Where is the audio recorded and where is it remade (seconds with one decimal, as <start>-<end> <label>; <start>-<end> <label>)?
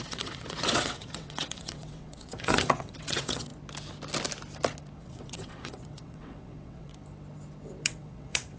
0.0-3.5 remade; 3.5-5.0 recorded; 5.0-6.9 remade; 6.9-7.8 recorded; 7.8-8.6 remade